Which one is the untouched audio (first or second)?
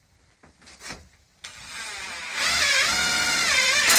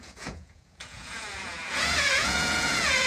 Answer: first